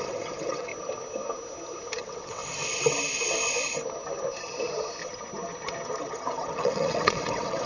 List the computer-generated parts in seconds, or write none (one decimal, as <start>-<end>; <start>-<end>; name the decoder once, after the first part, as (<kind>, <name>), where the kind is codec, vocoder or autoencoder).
0.0-0.7 (vocoder, WaveNeXt); 2.0-2.4; 6.0-7.7